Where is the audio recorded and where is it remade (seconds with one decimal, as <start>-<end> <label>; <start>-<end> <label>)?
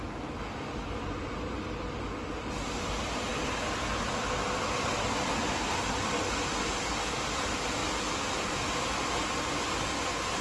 0.0-10.4 recorded